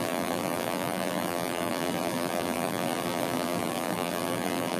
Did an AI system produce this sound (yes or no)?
yes